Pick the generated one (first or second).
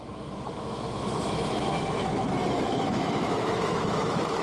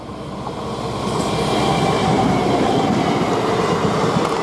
first